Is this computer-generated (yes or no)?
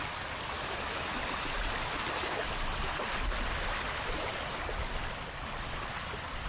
no